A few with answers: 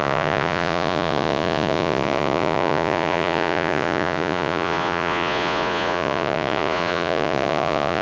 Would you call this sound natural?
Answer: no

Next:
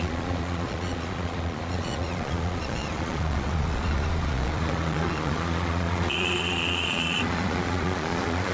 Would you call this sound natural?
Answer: no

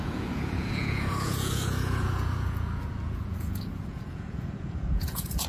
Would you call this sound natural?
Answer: no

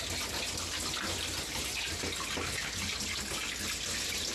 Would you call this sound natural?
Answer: yes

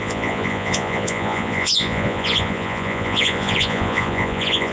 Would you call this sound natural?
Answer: no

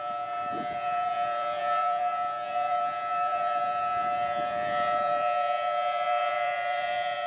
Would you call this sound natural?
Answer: no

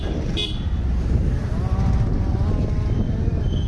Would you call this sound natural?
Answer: yes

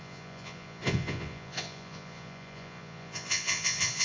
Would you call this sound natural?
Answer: no